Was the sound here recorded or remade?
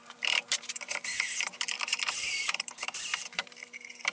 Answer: remade